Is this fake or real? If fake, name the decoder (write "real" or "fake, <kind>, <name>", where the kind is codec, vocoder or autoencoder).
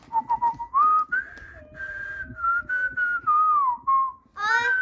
real